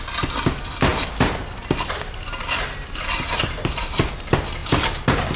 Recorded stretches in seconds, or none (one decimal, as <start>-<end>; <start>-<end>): 0.0-0.9; 4.1-5.4